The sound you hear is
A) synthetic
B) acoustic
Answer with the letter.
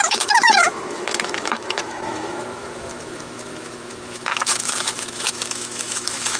A